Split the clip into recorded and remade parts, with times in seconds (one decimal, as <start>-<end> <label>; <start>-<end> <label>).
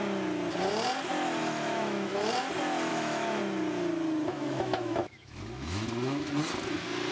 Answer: 0.0-1.4 recorded; 1.4-2.3 remade; 2.3-2.9 recorded; 2.9-3.4 remade; 3.4-4.3 recorded; 4.3-6.3 remade; 6.3-7.1 recorded